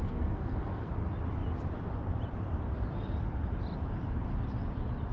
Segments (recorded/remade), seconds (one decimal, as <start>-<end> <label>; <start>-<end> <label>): 0.0-0.9 remade; 0.9-5.1 recorded